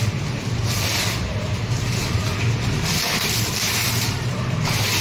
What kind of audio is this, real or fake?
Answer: fake